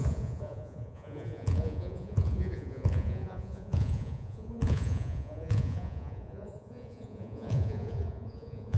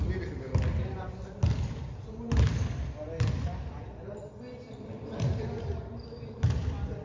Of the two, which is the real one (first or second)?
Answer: second